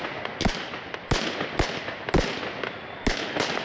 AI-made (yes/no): no